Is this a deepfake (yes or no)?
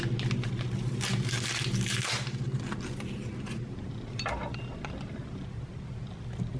no